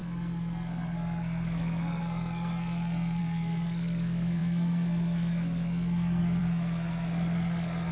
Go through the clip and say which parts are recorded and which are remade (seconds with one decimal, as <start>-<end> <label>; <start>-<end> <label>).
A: 0.0-7.9 remade